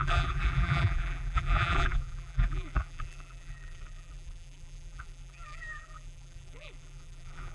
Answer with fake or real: fake